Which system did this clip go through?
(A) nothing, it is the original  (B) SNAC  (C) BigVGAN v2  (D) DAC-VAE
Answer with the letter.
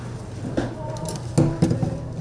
A